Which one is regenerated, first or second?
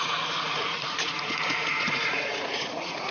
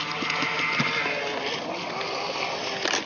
first